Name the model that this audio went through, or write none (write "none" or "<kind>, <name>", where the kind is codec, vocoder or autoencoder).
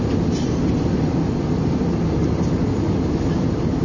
none